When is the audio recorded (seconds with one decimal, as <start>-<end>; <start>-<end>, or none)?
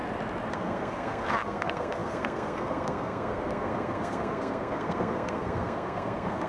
0.0-0.5